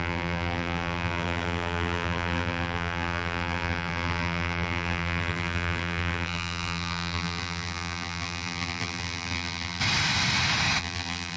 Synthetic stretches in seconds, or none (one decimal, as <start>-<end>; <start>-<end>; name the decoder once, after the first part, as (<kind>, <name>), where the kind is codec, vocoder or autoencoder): 0.0-9.8 (vocoder, BigVGAN v2); 10.8-11.4